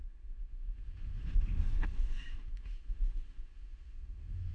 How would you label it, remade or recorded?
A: remade